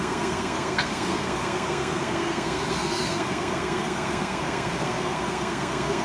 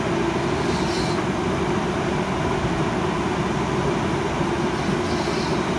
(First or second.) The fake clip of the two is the first